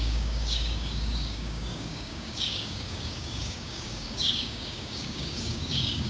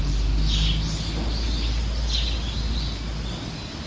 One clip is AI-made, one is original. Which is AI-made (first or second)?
first